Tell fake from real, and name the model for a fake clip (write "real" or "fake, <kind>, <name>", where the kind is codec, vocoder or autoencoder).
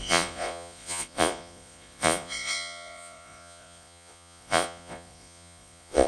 fake, vocoder, Vocos